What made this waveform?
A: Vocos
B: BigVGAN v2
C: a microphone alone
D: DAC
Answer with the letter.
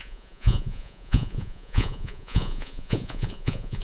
A